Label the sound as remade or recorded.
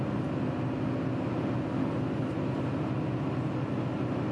recorded